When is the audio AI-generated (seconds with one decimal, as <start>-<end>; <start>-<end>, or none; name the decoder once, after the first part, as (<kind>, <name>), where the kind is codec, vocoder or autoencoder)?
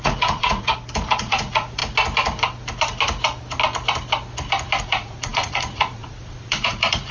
0.0-0.7 (vocoder, Vocos); 1.2-1.8; 4.8-7.1